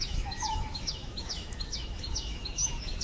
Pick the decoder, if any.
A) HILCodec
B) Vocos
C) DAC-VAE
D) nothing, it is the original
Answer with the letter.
C